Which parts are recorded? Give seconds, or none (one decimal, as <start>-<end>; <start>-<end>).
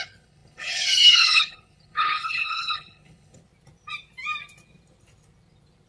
3.4-5.9